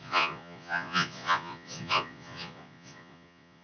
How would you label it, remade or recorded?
remade